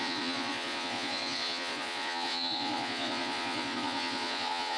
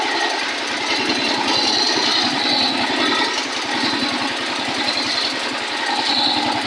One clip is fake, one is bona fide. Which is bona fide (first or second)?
second